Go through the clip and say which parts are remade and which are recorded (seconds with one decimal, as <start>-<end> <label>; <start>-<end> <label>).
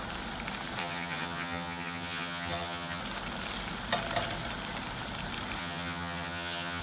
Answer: 0.0-0.8 recorded; 0.8-3.0 remade; 3.0-5.6 recorded; 5.6-6.8 remade